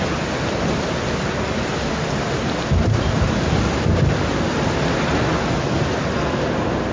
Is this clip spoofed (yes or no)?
no